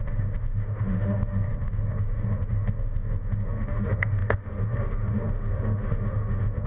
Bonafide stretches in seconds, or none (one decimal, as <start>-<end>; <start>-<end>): none